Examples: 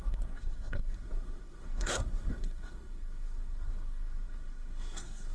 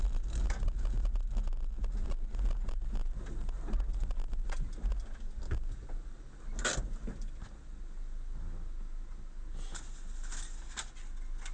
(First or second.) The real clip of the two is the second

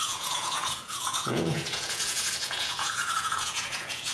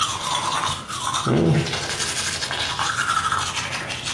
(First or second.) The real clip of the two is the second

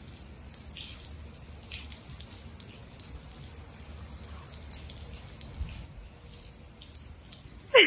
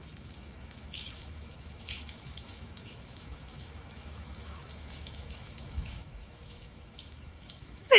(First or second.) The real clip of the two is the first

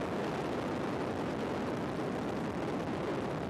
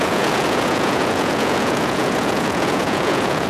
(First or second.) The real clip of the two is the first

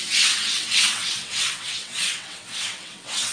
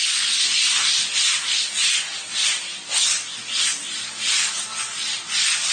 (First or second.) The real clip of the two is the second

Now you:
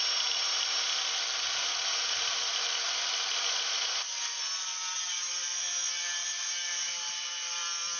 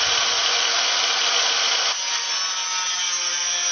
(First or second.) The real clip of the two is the second